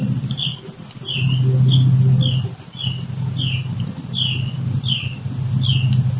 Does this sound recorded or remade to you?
recorded